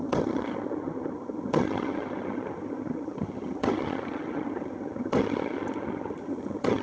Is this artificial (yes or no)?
yes